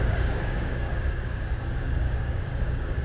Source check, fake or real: fake